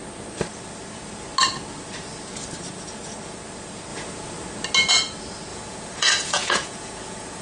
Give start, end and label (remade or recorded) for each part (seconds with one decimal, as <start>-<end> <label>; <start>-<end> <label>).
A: 0.0-5.5 recorded; 5.5-7.4 remade